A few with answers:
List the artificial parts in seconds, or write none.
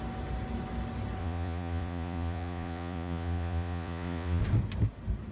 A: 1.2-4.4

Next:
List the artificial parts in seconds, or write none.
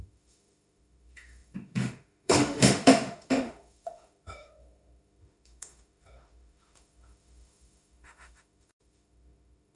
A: 0.0-9.8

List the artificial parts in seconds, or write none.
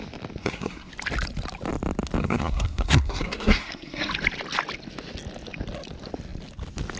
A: 0.4-0.9; 2.2-4.1